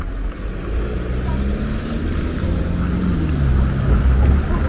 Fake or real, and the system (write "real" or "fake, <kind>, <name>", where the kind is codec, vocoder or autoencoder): real